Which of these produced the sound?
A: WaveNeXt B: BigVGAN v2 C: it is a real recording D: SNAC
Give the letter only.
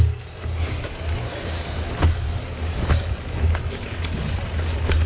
C